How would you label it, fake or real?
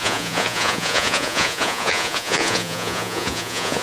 fake